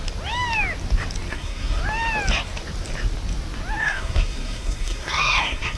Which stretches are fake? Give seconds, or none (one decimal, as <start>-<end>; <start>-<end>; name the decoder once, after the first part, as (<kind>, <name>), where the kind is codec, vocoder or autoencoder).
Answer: 1.3-1.8 (codec, SNAC); 3.8-5.8